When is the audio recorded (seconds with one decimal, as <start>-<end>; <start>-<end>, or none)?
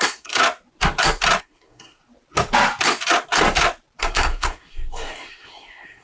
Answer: 0.4-1.4; 2.0-4.0